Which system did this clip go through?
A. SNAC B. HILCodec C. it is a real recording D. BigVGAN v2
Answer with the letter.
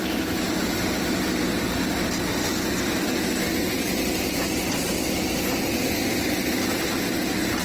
C